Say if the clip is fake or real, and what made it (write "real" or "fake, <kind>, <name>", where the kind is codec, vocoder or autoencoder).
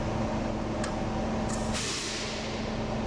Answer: real